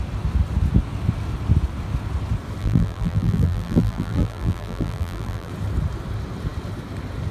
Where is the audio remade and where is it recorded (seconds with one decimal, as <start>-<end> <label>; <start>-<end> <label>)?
0.0-2.6 recorded; 2.6-5.5 remade; 5.5-7.3 recorded